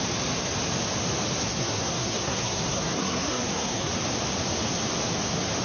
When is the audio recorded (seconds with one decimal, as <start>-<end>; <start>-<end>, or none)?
0.0-1.4; 3.9-5.6